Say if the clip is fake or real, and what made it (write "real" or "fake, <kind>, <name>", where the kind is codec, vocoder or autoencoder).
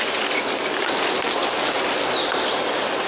real